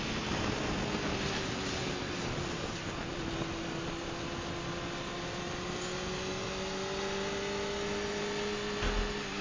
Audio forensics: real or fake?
real